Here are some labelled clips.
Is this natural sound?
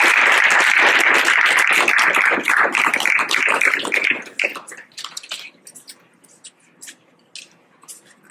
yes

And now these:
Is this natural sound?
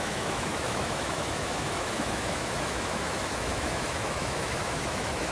no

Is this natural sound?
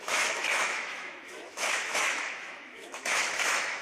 no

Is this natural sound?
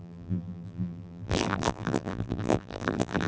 no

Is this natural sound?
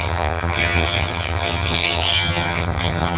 no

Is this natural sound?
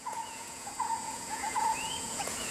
no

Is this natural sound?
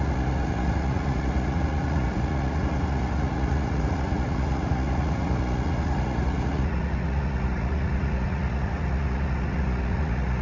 no